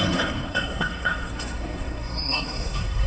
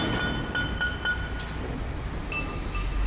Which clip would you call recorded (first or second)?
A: second